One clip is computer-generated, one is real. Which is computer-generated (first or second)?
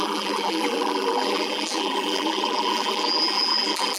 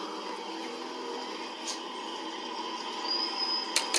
first